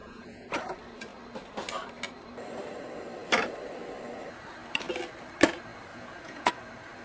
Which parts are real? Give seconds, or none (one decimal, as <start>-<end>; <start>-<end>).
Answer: 0.6-5.9; 6.5-7.0

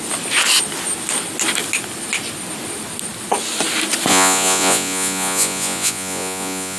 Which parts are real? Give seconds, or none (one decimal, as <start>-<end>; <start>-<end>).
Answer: 0.0-4.1